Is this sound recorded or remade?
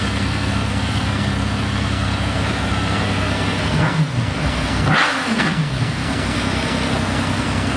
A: remade